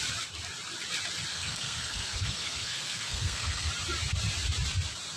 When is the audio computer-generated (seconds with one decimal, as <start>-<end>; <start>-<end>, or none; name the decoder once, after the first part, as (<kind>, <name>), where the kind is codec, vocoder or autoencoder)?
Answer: 1.3-3.7 (codec, SNAC)